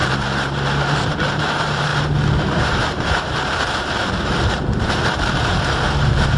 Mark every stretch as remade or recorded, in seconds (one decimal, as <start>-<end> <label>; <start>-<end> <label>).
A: 0.0-1.9 remade; 1.9-2.4 recorded; 2.4-6.4 remade